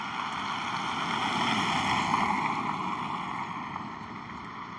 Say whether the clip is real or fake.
real